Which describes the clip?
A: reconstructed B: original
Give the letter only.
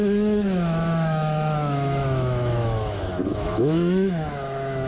A